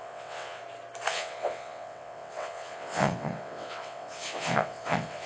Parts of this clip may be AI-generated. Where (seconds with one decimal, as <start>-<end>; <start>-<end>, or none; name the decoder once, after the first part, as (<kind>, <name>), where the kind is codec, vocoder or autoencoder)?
0.0-0.6 (vocoder, WaveNeXt); 1.1-5.3